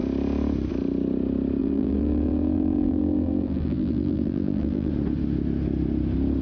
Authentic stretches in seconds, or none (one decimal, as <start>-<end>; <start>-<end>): 0.0-1.6; 4.9-6.4